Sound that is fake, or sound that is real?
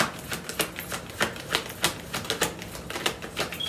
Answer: real